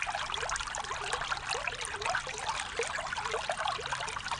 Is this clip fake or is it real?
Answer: real